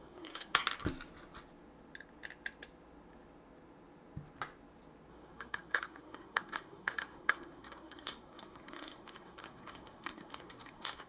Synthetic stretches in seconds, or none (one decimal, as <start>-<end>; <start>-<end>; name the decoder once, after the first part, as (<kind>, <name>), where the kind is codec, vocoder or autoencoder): 0.0-0.6 (codec, SNAC); 5.1-11.1

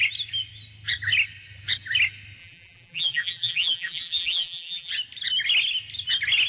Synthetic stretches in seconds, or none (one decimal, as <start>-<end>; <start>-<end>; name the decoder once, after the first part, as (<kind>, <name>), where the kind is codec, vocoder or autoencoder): 2.4-4.9 (vocoder, BigVGAN v2)